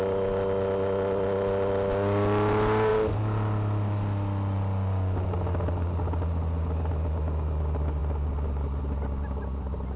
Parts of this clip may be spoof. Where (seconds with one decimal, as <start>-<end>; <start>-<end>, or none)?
none